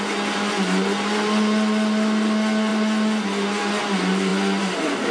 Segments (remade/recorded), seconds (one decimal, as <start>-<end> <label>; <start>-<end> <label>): 0.0-5.1 recorded